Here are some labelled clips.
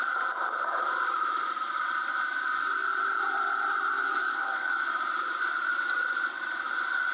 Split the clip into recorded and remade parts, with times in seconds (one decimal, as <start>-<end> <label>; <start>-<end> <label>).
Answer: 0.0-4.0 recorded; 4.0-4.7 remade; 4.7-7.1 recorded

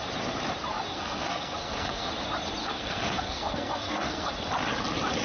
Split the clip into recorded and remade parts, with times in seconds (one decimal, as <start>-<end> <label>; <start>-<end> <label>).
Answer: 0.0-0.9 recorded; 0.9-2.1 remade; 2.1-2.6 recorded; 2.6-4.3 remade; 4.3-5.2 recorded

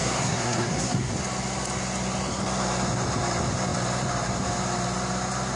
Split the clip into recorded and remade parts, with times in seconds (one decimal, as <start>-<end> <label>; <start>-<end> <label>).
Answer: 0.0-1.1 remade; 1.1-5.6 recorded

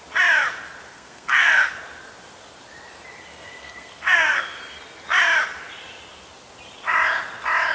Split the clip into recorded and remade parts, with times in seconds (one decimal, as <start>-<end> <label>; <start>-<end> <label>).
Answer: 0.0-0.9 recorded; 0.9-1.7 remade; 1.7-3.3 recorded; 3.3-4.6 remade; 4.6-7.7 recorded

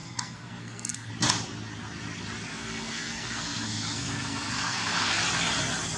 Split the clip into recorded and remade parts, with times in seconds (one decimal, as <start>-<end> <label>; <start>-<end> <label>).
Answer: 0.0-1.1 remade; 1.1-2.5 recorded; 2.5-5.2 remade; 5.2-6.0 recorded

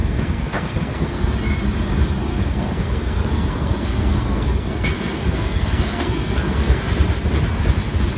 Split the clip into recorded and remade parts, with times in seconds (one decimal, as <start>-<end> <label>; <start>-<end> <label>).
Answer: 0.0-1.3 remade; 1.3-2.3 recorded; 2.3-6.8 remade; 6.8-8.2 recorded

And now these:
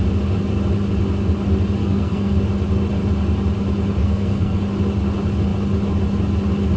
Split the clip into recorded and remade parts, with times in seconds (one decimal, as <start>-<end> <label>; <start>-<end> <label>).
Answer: 0.0-1.8 recorded; 1.8-2.4 remade; 2.4-4.0 recorded; 4.0-4.6 remade; 4.6-6.8 recorded